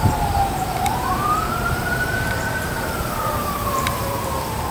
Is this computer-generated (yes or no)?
yes